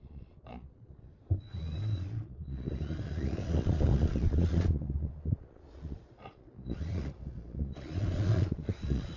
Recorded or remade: remade